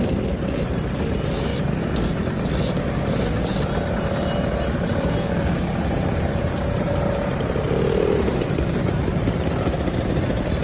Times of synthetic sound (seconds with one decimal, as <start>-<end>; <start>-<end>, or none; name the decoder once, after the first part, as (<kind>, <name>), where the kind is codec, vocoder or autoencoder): 0.0-1.5 (vocoder, BigVGAN v2); 4.2-10.6

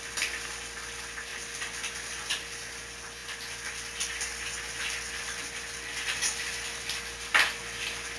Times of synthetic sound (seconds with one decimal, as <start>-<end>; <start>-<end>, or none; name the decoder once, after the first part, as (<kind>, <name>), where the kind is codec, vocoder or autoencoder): none

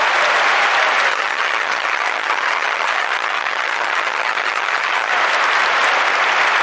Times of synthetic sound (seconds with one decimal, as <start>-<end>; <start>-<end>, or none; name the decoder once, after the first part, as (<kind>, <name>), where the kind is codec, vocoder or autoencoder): 1.1-5.1 (vocoder, HiFi-GAN)

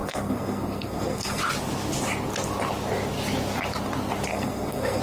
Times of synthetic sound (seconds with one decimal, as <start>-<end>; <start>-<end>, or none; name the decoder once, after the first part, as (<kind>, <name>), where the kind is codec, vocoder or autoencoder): 0.0-1.4 (codec, SNAC); 4.3-5.0